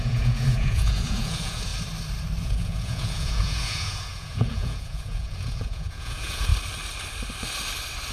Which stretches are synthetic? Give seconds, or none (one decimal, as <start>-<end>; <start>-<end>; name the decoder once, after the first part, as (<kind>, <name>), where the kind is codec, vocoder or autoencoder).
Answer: 0.0-1.7 (vocoder, Vocos); 2.4-6.5